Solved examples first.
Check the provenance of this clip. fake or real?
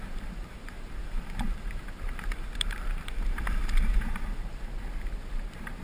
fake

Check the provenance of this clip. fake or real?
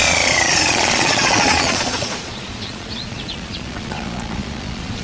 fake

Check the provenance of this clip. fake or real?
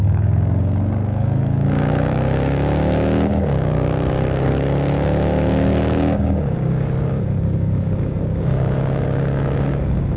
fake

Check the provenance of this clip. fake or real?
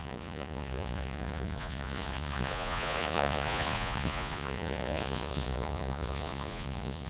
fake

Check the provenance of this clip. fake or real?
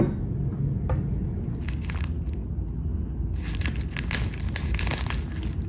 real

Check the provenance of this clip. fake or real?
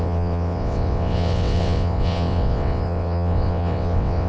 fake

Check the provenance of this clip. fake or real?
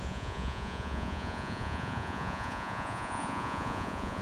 fake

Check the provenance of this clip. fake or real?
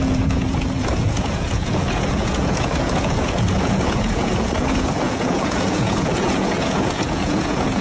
fake